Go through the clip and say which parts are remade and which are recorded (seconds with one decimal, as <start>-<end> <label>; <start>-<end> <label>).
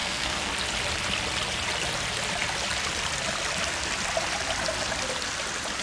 0.0-0.5 remade; 0.5-5.8 recorded